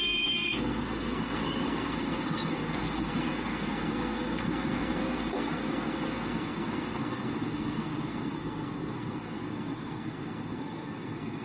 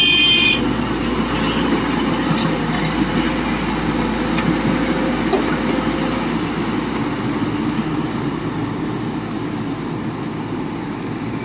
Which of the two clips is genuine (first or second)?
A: second